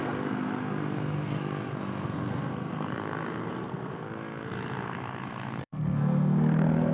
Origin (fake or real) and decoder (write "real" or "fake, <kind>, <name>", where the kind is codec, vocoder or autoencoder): fake, codec, SNAC